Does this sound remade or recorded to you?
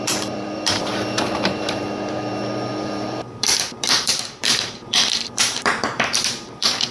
remade